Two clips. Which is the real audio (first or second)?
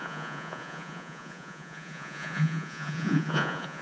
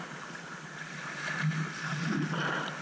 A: second